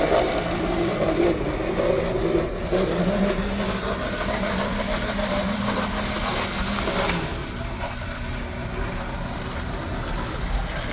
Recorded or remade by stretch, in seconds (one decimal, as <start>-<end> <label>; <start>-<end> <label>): 0.0-7.4 recorded; 7.4-7.9 remade; 7.9-10.9 recorded